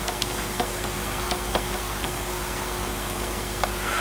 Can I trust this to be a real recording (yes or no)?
no